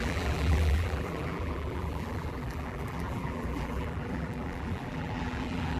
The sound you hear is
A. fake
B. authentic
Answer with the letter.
A